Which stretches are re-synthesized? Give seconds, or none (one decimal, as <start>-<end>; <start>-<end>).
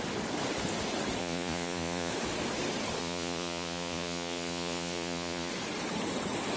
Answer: 1.2-2.1; 3.0-5.5